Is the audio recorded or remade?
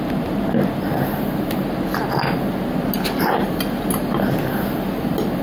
recorded